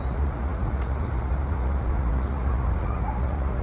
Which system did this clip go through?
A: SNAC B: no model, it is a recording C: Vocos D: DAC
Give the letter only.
C